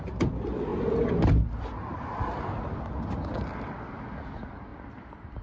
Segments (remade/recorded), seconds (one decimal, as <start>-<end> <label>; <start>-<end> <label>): 0.0-5.4 recorded